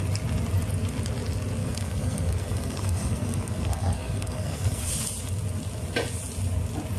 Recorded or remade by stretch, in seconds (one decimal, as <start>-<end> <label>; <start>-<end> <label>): 0.0-1.6 recorded; 1.6-4.9 remade; 4.9-7.0 recorded